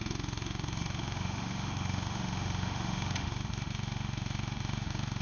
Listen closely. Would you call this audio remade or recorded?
remade